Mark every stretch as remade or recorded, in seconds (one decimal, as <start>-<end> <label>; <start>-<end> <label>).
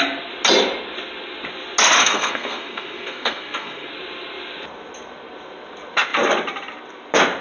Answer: 0.0-2.0 recorded; 2.0-3.9 remade; 3.9-7.4 recorded